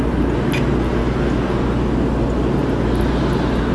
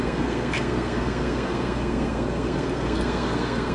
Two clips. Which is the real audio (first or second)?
first